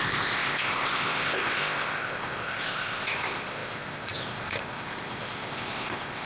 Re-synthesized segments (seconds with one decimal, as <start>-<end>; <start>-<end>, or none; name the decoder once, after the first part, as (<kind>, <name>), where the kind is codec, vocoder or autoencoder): 0.0-6.3 (codec, ZipCodec)